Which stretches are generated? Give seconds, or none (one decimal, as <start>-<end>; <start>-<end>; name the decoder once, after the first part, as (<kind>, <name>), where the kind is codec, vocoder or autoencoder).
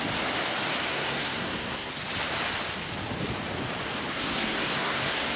0.9-1.9 (codec, SNAC); 4.1-5.4